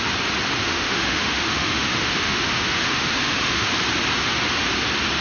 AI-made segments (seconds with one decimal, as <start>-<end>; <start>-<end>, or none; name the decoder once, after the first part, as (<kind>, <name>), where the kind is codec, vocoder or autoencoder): 0.6-3.7 (autoencoder, DAC-VAE)

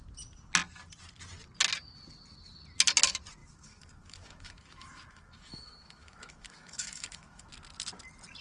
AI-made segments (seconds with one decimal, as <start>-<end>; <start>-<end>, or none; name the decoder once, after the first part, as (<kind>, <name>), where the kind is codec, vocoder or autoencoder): 3.4-7.5 (autoencoder, DAC-VAE)

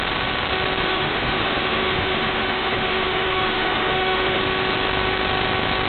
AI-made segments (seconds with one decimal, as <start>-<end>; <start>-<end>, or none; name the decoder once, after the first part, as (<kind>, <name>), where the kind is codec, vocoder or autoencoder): 0.9-4.4 (autoencoder, DAC-VAE)

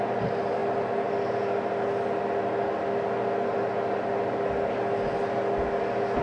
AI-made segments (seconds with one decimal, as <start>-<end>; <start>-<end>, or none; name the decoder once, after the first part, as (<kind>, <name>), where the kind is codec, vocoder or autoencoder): none

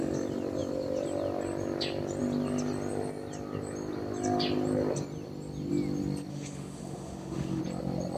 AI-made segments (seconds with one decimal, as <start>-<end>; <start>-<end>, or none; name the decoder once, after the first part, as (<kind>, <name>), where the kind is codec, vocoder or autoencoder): 6.3-7.6 (autoencoder, DAC-VAE)

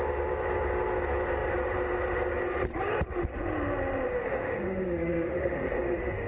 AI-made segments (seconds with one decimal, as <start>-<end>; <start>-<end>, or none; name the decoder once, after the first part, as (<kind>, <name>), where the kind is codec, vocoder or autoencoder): 4.1-6.3 (autoencoder, DAC-VAE)